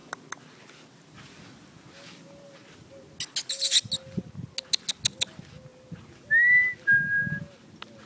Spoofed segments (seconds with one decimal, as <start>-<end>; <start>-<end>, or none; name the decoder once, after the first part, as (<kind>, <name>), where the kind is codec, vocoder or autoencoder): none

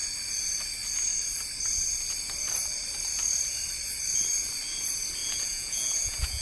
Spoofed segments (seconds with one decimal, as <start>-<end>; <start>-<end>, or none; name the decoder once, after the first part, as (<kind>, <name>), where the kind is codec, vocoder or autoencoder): 5.2-6.4 (vocoder, Vocos)

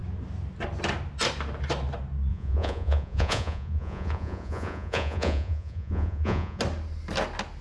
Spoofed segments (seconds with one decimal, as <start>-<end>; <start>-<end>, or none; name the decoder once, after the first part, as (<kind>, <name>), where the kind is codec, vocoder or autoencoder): 2.3-6.6 (vocoder, Vocos)

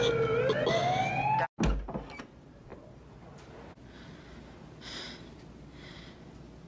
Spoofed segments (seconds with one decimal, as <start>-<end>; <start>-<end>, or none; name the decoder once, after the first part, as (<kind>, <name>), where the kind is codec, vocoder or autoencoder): none

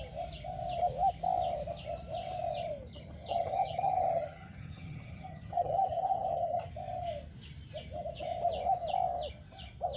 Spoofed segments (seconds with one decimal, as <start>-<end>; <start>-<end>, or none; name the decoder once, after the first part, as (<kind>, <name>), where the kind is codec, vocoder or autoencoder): 3.3-6.7 (vocoder, HiFi-GAN)

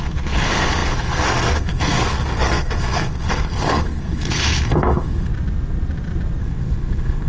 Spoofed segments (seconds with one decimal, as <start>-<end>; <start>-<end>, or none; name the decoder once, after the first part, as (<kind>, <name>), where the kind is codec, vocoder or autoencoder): 0.0-5.3 (codec, SNAC); 6.4-7.3

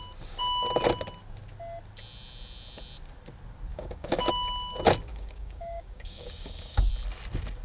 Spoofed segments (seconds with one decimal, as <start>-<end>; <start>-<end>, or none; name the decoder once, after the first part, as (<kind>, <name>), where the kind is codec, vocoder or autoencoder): 3.7-4.3 (codec, DAC); 5.1-6.9

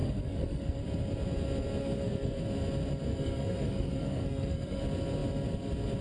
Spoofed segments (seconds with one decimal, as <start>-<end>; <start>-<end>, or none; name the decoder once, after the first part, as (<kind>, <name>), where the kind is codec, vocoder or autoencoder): 0.0-0.8 (codec, SNAC); 1.8-2.4; 3.1-4.8